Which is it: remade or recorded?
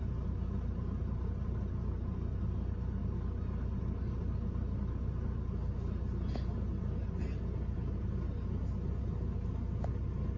recorded